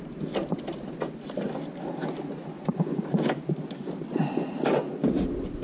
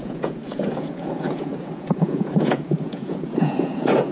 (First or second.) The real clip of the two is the first